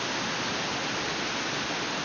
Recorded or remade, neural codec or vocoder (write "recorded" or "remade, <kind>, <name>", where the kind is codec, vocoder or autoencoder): recorded